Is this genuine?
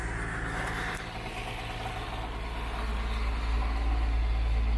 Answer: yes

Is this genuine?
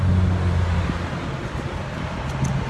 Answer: yes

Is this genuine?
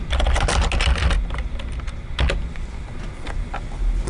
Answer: yes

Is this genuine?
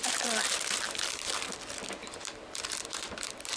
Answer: no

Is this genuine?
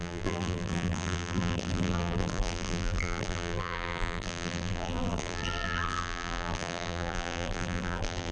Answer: no